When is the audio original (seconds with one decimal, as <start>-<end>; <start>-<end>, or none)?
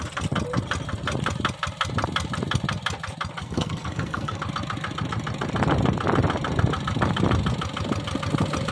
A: 0.0-3.4; 4.4-8.7